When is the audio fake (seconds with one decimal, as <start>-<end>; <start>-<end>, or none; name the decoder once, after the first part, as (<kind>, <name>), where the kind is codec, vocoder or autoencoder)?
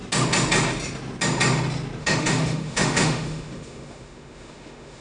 2.0-5.0 (autoencoder, DAC-VAE)